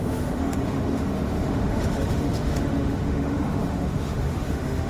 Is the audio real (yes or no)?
no